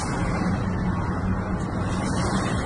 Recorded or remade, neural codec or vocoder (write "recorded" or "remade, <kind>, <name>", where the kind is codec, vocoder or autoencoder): recorded